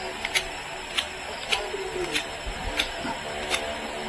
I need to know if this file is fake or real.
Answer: real